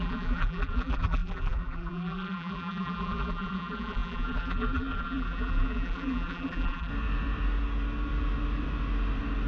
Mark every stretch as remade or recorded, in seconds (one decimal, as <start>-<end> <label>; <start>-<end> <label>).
0.0-6.9 remade; 6.9-9.5 recorded

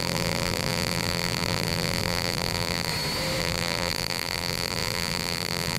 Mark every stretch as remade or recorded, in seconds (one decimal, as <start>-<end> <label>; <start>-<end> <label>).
0.0-2.9 remade; 2.9-3.4 recorded; 3.4-5.8 remade

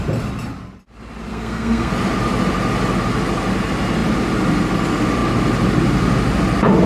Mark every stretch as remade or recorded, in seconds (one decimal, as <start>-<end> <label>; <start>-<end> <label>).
0.0-1.3 recorded; 1.3-1.9 remade; 1.9-6.9 recorded

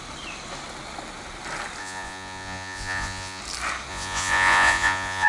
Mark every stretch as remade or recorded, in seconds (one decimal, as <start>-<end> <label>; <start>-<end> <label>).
0.0-1.8 recorded; 1.8-3.4 remade; 3.4-3.9 recorded; 3.9-5.3 remade

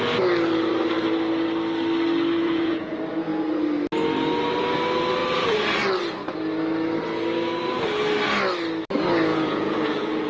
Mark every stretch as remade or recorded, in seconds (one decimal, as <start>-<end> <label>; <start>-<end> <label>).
0.0-2.4 recorded; 2.4-2.9 remade; 2.9-9.3 recorded; 9.3-10.3 remade

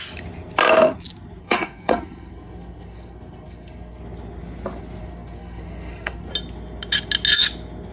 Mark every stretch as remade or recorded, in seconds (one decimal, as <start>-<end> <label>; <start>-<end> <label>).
0.0-1.4 recorded; 1.4-4.0 remade; 4.0-5.0 recorded; 5.0-6.3 remade; 6.3-7.9 recorded

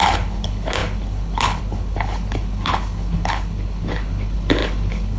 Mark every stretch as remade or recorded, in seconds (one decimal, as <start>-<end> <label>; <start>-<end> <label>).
0.0-5.2 remade